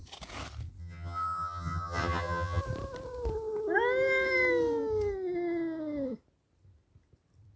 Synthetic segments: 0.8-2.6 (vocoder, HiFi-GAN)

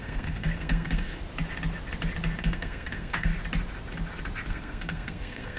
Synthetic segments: 0.0-1.2 (codec, SNAC); 2.4-3.3; 4.5-5.6